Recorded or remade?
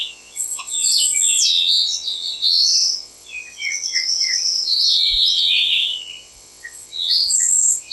remade